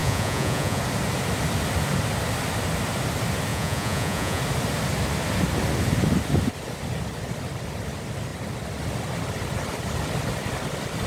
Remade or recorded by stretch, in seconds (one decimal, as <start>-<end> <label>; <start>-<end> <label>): 0.0-0.8 remade; 0.8-3.5 recorded; 3.5-4.4 remade; 4.4-11.1 recorded